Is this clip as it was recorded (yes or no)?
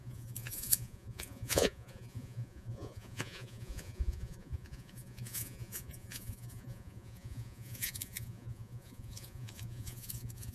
no